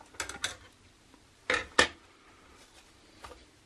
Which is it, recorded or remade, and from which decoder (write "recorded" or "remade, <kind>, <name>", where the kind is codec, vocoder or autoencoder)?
recorded